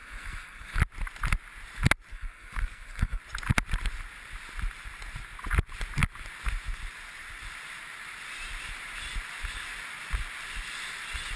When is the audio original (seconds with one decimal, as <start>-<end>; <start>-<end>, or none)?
0.8-2.1; 3.2-11.4